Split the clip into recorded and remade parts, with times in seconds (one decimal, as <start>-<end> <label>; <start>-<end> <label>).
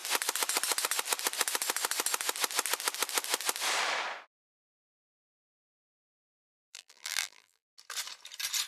0.0-6.4 recorded; 6.4-7.7 remade; 7.7-8.7 recorded